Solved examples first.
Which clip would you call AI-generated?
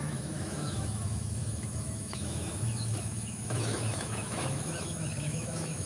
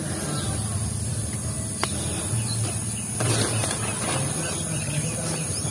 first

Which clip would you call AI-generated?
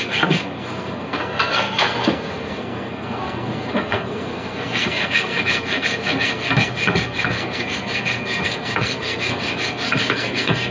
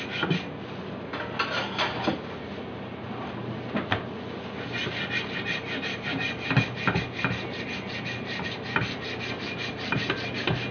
first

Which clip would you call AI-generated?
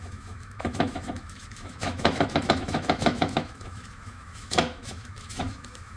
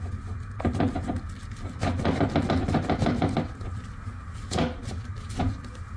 first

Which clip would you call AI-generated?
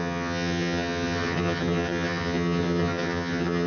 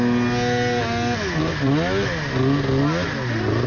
first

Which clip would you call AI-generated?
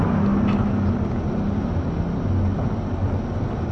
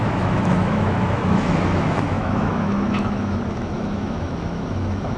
second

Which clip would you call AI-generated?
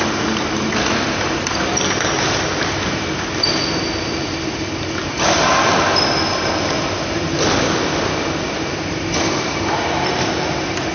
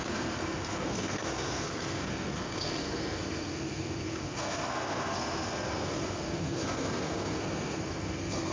second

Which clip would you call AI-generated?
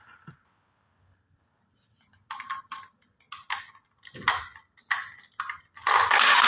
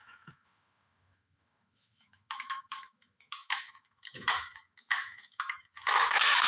second